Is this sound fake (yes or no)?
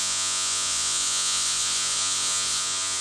yes